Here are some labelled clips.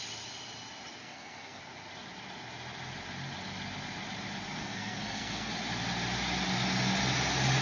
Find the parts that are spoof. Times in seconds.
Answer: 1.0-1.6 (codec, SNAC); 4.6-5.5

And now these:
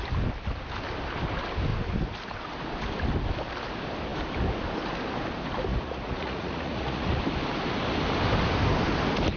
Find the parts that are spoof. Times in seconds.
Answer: 5.7-7.2 (vocoder, Vocos)

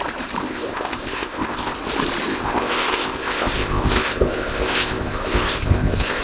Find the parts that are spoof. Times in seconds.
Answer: 0.4-1.7 (codec, ZipCodec); 2.3-6.2

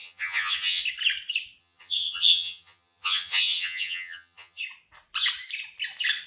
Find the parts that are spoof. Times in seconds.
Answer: 0.0-0.8 (vocoder, HiFi-GAN); 1.6-4.6

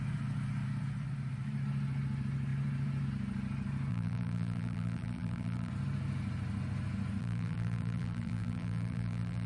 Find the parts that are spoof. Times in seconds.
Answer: 3.9-5.7 (vocoder, BigVGAN v2); 7.2-9.5

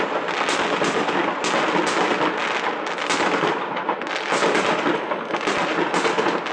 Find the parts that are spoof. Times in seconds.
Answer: none

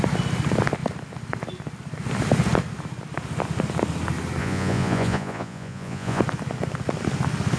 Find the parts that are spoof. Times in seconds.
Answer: 4.4-6.2 (vocoder, Vocos)

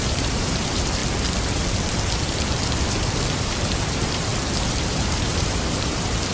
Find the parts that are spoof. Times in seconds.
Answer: 0.0-1.0 (vocoder, BigVGAN v2); 3.4-4.3; 4.8-6.3